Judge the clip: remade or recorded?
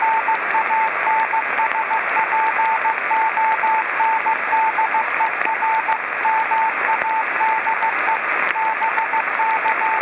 recorded